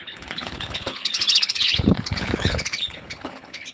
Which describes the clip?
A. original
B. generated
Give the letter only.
B